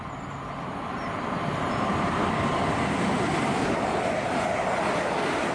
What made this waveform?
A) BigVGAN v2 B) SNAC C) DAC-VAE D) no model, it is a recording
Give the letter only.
D